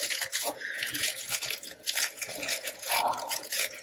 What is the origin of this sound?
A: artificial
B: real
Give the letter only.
A